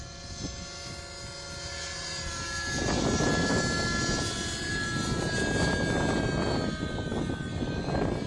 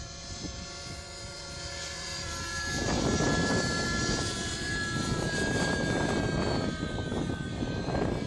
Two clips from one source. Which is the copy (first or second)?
second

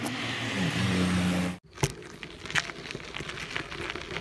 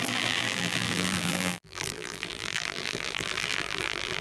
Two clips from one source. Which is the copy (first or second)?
second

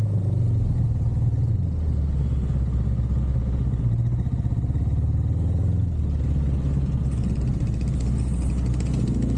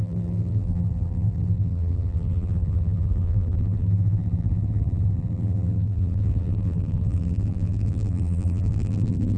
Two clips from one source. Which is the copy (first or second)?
second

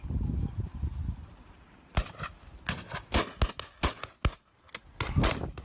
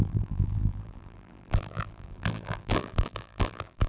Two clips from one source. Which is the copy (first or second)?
second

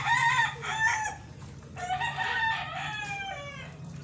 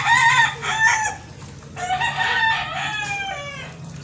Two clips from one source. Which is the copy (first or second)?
first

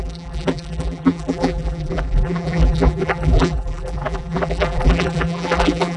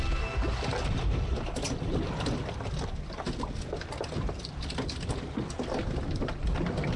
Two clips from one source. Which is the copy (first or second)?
first